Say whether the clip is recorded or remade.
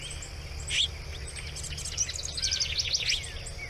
recorded